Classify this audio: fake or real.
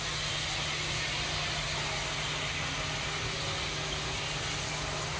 real